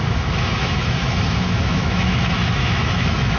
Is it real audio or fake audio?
fake